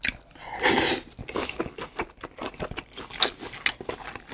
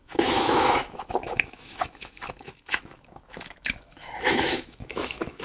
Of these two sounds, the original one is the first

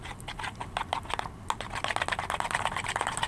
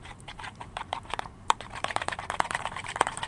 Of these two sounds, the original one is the first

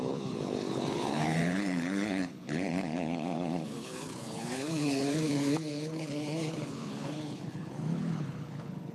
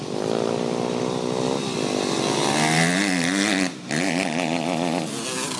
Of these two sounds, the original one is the second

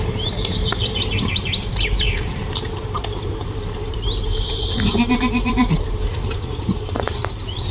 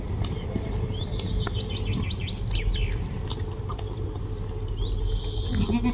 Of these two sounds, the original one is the second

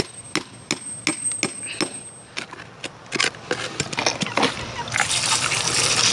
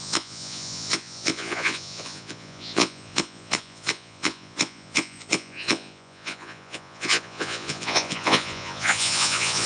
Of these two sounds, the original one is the first